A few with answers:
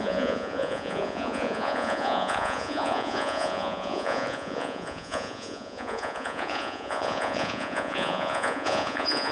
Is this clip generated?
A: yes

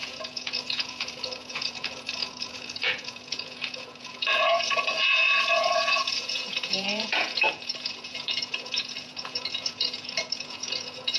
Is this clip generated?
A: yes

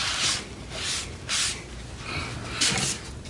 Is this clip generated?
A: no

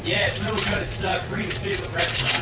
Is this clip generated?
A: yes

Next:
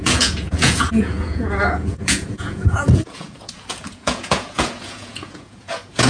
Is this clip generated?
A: yes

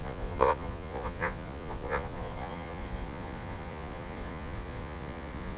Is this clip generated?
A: yes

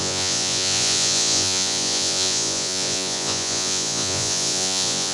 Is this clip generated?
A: yes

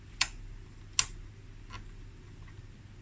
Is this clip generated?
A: no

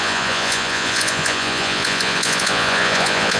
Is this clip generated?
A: yes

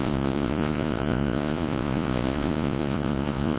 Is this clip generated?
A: yes